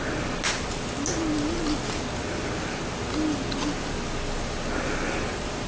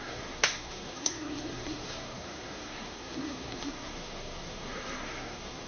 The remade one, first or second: second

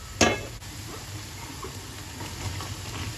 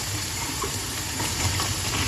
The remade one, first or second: second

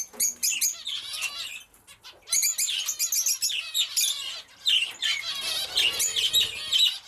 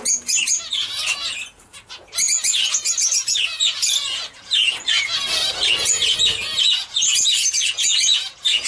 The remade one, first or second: second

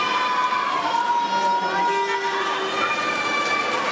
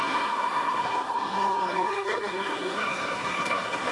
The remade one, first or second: second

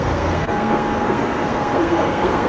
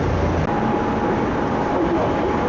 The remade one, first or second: first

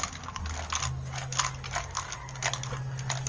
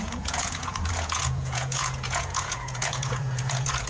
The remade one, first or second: second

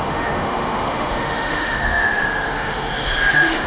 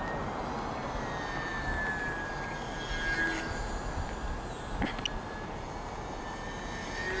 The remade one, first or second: first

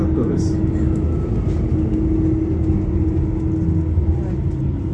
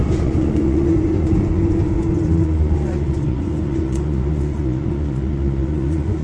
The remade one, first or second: second